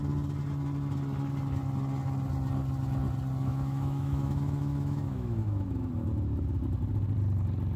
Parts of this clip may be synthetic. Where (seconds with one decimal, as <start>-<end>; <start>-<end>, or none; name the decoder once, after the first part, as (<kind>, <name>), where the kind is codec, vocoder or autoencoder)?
3.5-5.9 (autoencoder, DAC-VAE)